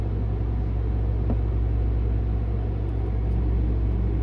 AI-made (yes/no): no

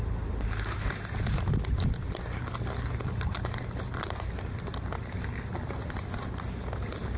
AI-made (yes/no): yes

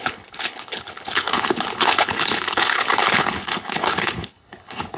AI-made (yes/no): yes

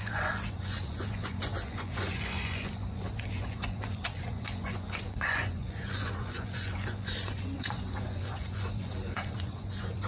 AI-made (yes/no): yes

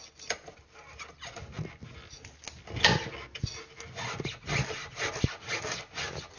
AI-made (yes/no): no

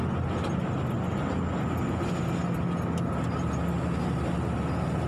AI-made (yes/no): no